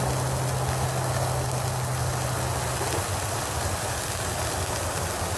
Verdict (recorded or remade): recorded